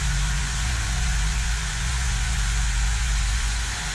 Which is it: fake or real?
fake